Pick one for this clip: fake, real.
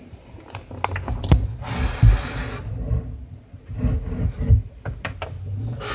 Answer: real